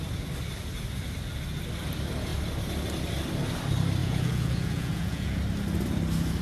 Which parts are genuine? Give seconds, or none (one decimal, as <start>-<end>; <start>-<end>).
0.0-4.0; 5.4-6.4